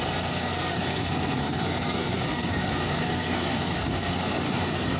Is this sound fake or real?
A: fake